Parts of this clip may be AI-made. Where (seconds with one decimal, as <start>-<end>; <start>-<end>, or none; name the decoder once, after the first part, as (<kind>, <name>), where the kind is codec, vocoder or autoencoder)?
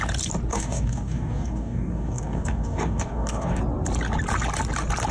0.5-3.6 (codec, DAC)